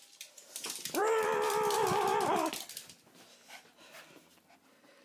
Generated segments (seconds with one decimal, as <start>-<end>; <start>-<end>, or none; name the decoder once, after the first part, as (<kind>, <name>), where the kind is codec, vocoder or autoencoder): none